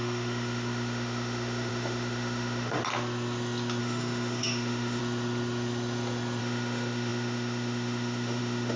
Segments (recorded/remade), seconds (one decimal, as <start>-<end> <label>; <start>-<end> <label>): 0.0-2.8 remade; 2.8-3.8 recorded; 3.8-5.0 remade; 5.0-6.4 recorded; 6.4-8.8 remade